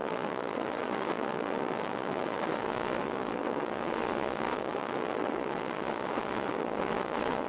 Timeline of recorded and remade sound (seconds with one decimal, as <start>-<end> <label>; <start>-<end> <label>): 0.0-7.5 remade